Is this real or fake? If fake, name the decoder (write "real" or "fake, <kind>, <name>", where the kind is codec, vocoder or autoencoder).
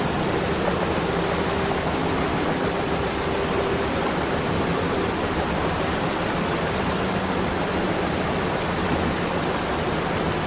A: real